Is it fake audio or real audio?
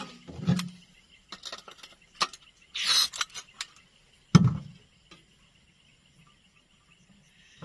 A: real